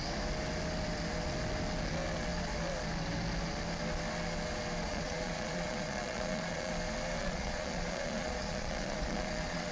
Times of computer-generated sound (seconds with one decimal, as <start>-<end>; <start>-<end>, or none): 4.9-6.7; 7.2-9.7